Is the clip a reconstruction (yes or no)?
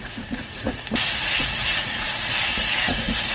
yes